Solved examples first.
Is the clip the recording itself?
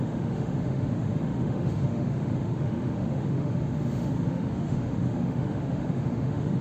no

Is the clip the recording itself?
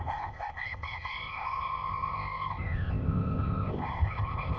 no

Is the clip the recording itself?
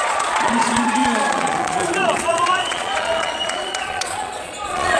no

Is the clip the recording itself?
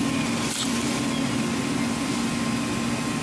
yes